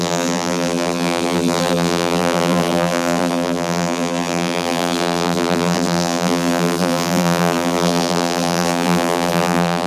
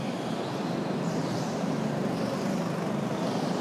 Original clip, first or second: second